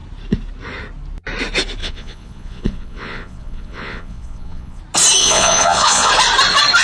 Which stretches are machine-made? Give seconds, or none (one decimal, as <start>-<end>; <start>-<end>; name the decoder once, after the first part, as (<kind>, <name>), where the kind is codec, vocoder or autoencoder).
1.8-4.8 (vocoder, Vocos); 5.2-6.1